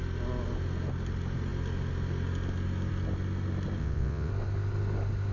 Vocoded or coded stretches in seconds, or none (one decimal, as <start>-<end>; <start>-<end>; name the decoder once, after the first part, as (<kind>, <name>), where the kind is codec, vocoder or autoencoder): 3.8-4.3 (vocoder, WaveNeXt)